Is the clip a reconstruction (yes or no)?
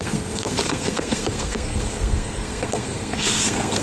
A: yes